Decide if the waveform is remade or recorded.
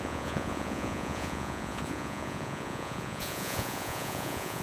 remade